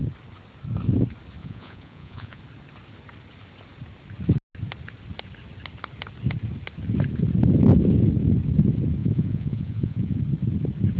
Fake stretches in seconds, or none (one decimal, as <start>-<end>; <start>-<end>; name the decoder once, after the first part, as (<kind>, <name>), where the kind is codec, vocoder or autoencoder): 1.4-2.4 (vocoder, Vocos); 9.0-10.2